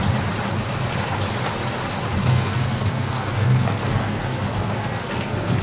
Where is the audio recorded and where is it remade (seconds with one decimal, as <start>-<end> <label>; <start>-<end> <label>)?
0.0-2.2 recorded; 2.2-5.6 remade